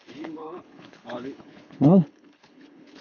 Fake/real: fake